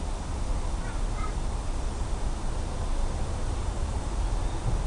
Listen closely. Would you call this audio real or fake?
real